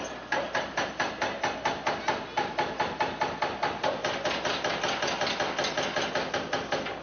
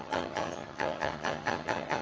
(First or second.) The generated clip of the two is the second